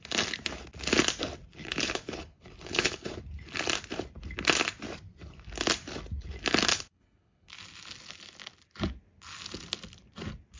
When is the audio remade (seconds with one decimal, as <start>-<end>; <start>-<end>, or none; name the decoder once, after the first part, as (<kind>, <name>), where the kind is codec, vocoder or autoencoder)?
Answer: 1.6-3.1 (codec, HILCodec); 6.7-7.5